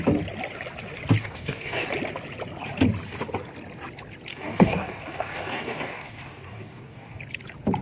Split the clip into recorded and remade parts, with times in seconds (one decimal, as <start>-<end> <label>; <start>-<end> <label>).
0.0-1.2 recorded; 1.2-1.9 remade; 1.9-4.3 recorded; 4.3-7.2 remade; 7.2-7.8 recorded